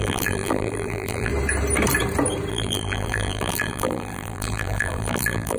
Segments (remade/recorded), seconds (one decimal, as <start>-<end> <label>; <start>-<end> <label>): 0.0-1.3 remade; 1.3-2.5 recorded; 2.5-5.6 remade